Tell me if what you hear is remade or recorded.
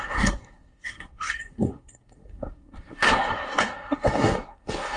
remade